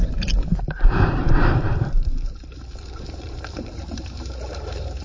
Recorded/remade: remade